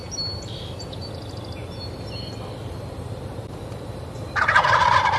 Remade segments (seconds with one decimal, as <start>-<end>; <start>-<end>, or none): 0.0-0.7; 2.6-4.8